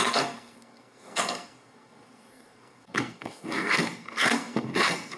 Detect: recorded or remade remade